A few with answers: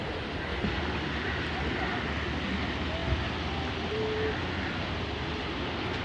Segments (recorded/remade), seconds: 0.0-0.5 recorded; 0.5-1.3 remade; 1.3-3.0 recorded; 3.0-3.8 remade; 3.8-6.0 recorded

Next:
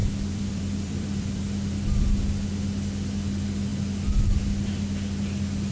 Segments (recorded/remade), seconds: 0.0-1.4 remade; 1.4-5.7 recorded

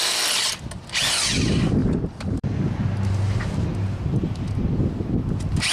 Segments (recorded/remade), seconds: 0.0-1.8 recorded; 1.8-3.0 remade; 3.0-3.7 recorded; 3.7-4.4 remade; 4.4-5.7 recorded

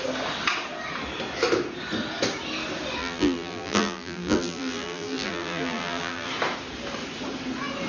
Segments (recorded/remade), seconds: 0.0-3.0 recorded; 3.0-6.3 remade; 6.3-7.9 recorded

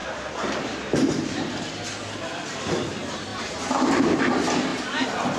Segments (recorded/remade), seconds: 0.0-1.5 remade; 1.5-3.3 recorded; 3.3-4.2 remade; 4.2-5.4 recorded